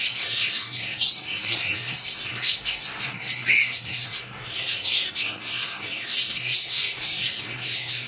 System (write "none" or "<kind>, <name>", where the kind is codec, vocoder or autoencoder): codec, SNAC